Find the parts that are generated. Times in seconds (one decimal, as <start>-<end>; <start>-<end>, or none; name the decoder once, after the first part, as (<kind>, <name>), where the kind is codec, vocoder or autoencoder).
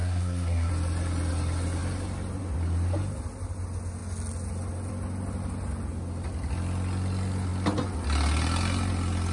0.0-0.7 (codec, SNAC)